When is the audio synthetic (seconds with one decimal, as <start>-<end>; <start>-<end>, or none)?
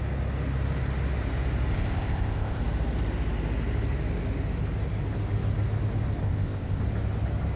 1.7-2.6; 6.2-6.8